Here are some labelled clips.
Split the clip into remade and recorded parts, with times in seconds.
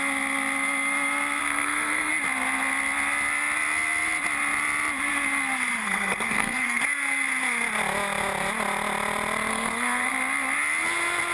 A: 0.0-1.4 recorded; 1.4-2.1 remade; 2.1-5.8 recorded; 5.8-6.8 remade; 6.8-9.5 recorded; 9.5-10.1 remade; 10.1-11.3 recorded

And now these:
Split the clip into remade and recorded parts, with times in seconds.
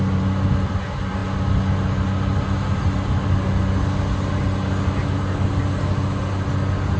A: 0.0-7.0 recorded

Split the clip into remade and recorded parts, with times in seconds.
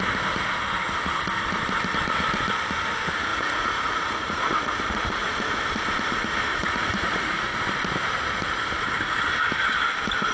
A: 0.0-3.3 recorded; 3.3-5.6 remade; 5.6-6.5 recorded; 6.5-7.6 remade; 7.6-10.3 recorded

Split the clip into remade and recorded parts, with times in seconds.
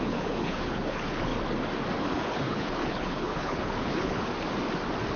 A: 0.0-1.3 remade; 1.3-2.0 recorded; 2.0-4.3 remade; 4.3-5.2 recorded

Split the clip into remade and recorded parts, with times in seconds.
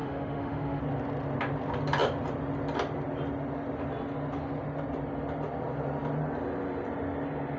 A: 0.0-0.8 remade; 0.8-7.6 recorded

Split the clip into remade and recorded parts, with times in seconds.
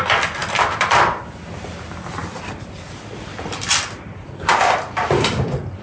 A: 0.0-0.4 recorded; 0.4-1.2 remade; 1.2-2.2 recorded; 2.2-5.8 remade